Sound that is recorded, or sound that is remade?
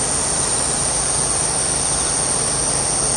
recorded